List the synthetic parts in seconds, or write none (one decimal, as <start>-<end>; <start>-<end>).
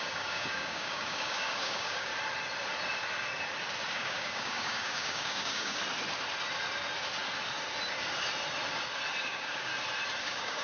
0.0-2.1; 3.9-5.8; 9.2-9.7; 10.2-10.6